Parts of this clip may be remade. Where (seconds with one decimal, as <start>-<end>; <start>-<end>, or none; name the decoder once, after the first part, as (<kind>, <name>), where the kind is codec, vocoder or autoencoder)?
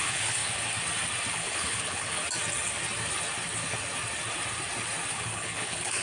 0.0-0.4 (codec, HILCodec); 1.3-2.2; 5.1-6.0